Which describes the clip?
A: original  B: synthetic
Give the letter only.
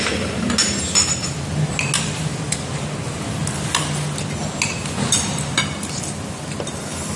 A